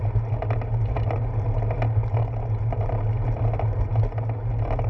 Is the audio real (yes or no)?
yes